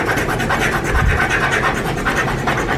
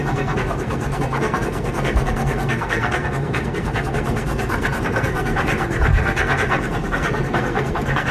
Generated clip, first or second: second